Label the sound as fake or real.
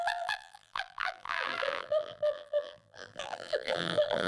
fake